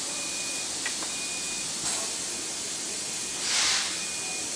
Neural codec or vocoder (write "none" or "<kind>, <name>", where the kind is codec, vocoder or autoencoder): none